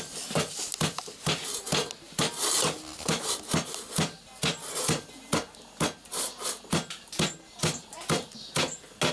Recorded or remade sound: recorded